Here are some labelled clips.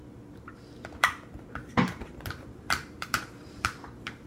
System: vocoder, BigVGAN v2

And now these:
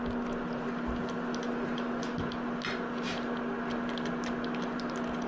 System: none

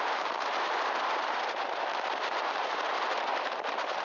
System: vocoder, BigVGAN v2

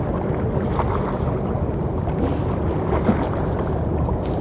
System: none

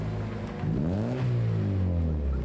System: none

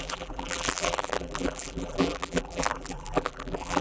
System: vocoder, BigVGAN v2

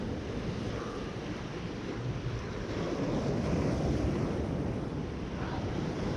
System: vocoder, BigVGAN v2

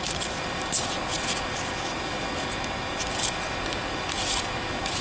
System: vocoder, BigVGAN v2